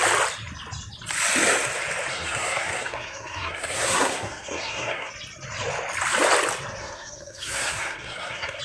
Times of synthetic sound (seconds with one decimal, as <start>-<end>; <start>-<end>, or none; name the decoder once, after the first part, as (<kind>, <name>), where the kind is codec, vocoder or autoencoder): 2.1-5.1 (codec, SNAC); 6.8-8.6